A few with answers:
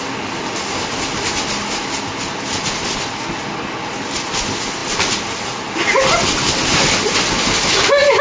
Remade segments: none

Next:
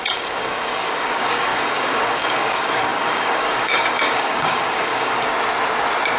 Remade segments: 0.0-5.3 (codec, DAC)

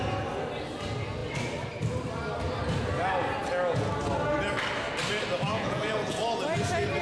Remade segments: 5.5-6.2 (vocoder, Vocos)

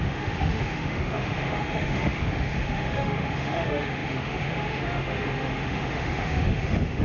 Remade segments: 0.0-7.0 (autoencoder, DAC-VAE)

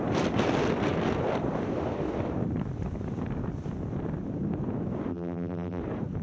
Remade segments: 5.1-5.8 (vocoder, BigVGAN v2)